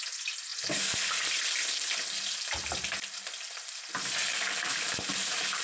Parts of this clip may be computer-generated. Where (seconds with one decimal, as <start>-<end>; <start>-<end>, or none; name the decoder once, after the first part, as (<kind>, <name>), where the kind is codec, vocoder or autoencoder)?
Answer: none